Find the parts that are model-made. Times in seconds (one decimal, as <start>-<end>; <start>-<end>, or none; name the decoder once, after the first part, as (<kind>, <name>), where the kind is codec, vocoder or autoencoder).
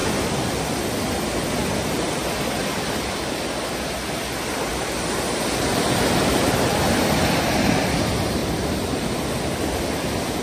none